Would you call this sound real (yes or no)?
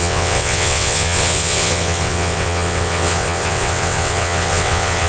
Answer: no